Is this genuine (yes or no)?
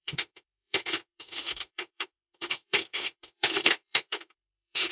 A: no